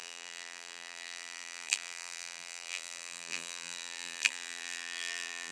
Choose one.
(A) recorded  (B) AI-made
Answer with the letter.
B